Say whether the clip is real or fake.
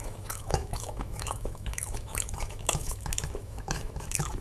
fake